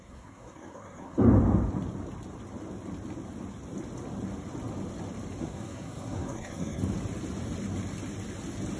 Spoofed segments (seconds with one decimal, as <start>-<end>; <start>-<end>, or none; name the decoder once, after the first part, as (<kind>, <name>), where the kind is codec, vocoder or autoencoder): 0.0-1.3 (codec, SNAC); 5.4-6.8